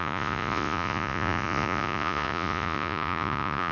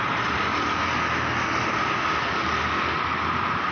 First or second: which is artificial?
first